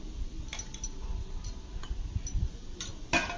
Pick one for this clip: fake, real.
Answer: real